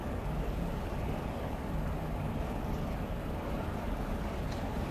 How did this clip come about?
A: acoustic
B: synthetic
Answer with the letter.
B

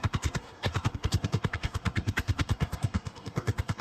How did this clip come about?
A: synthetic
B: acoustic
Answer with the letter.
A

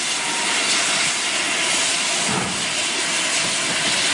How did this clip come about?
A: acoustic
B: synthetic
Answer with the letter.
A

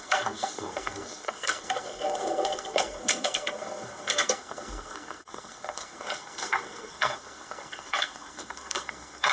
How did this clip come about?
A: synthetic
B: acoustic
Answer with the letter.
A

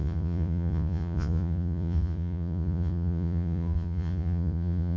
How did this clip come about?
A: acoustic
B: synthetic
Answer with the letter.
B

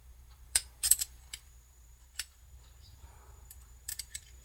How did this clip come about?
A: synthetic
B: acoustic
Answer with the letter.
A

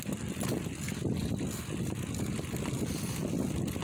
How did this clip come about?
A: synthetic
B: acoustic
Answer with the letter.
B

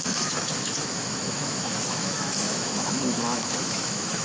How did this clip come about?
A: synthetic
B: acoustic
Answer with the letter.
A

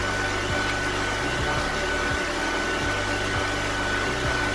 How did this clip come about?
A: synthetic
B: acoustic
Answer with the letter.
B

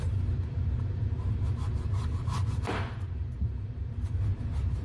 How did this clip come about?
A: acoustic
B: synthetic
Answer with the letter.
B